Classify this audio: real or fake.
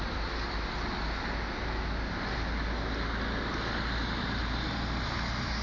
real